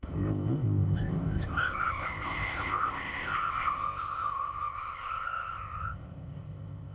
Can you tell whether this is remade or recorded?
remade